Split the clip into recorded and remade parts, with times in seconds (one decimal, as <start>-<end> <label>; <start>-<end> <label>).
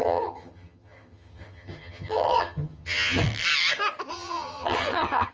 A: 0.0-3.2 remade; 3.2-4.1 recorded; 4.1-5.3 remade